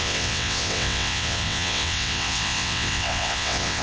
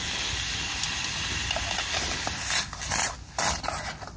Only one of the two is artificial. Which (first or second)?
first